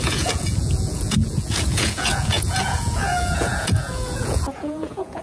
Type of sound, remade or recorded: remade